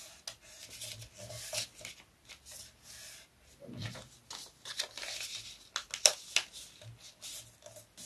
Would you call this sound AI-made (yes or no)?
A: no